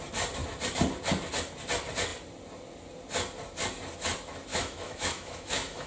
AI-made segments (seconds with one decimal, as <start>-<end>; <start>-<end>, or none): 4.5-5.9